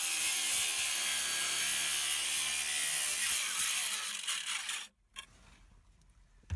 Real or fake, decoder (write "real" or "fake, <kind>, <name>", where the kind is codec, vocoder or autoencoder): real